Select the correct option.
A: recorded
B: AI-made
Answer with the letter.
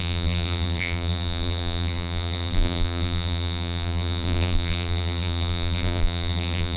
B